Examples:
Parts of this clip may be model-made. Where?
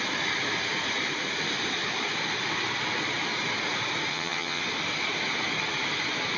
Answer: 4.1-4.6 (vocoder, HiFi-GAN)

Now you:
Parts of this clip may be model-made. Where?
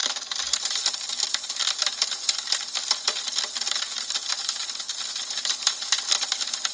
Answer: none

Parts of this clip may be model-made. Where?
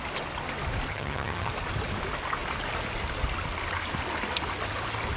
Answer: 0.9-1.5 (vocoder, HiFi-GAN)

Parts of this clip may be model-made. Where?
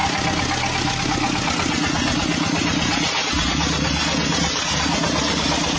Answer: none